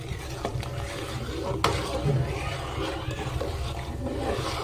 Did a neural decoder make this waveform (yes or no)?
no